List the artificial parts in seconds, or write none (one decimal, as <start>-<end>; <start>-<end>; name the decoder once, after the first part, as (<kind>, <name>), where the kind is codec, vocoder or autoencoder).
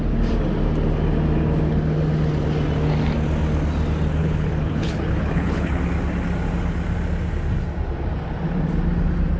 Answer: 4.2-5.8 (codec, HILCodec)